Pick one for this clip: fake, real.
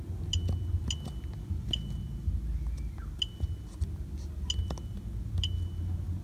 real